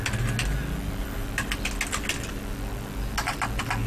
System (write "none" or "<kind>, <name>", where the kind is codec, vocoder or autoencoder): none